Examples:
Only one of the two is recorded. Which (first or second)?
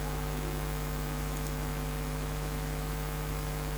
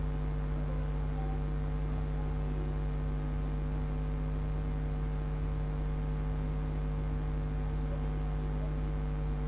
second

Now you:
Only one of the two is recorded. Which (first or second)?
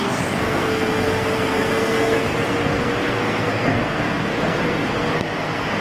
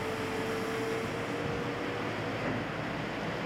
second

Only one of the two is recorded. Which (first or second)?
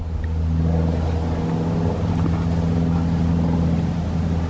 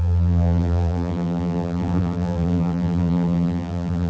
first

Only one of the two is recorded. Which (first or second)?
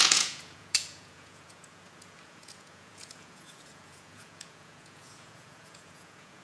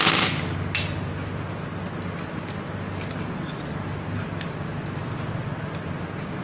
second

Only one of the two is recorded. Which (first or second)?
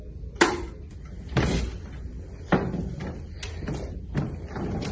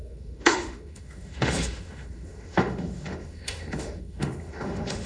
first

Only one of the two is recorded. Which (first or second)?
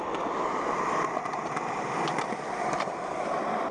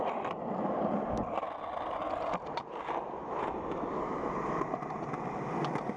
second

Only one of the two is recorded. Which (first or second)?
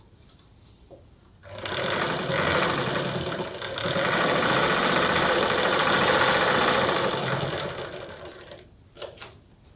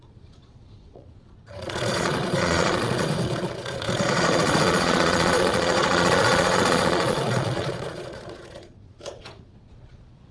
first